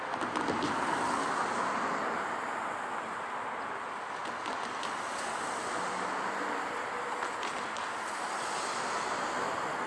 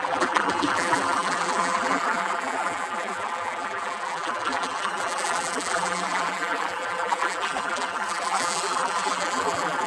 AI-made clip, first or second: second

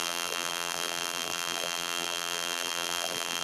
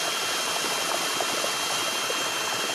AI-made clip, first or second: first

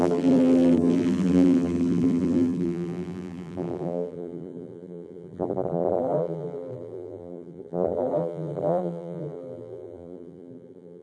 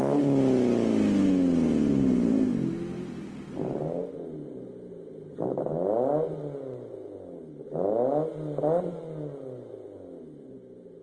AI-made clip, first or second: first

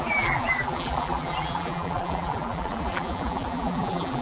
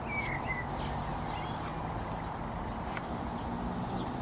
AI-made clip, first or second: first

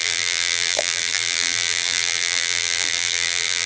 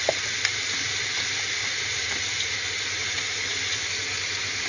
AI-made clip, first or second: first